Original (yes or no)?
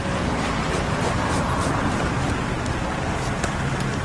yes